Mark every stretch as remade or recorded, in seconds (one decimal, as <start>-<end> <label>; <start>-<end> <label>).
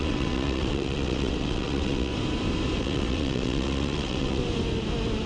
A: 0.0-2.1 remade; 2.1-2.8 recorded; 2.8-4.4 remade; 4.4-5.3 recorded